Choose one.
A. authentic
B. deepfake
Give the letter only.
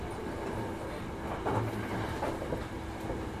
A